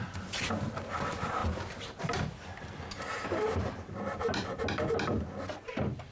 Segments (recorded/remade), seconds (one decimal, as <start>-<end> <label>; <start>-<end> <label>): 0.0-6.1 recorded